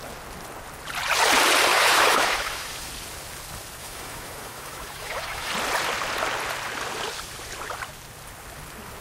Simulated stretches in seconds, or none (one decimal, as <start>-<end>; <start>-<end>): 1.7-2.9; 3.8-5.5